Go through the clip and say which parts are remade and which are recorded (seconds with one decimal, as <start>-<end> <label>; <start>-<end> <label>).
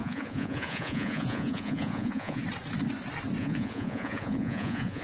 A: 0.0-2.4 remade; 2.4-3.4 recorded; 3.4-5.0 remade